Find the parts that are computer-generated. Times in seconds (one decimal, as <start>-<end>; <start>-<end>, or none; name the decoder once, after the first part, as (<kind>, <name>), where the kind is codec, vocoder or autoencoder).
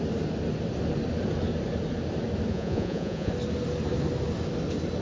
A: 2.5-3.3 (vocoder, Vocos)